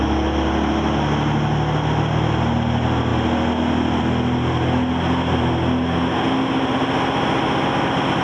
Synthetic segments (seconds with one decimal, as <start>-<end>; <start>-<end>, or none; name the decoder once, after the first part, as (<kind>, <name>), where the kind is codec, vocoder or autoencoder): none